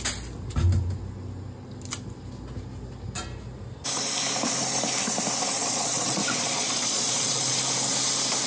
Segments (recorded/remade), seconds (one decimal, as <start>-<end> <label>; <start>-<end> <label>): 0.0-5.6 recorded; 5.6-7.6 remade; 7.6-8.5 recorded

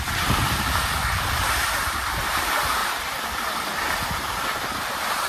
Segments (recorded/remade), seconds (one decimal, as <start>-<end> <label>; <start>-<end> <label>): 0.0-2.8 recorded; 2.8-3.9 remade; 3.9-5.3 recorded

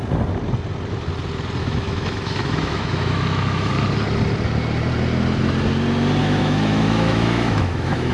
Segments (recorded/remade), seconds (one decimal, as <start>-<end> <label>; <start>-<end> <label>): 0.0-1.6 recorded; 1.6-3.7 remade; 3.7-6.2 recorded; 6.2-8.1 remade